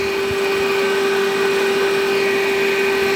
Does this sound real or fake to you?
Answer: real